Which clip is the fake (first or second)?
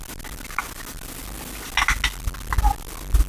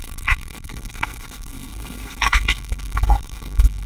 second